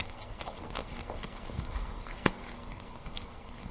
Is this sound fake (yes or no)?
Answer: yes